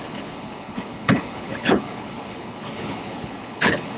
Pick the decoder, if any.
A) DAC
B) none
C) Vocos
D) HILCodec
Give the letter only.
D